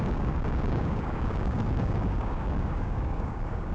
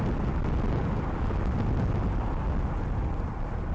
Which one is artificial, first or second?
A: first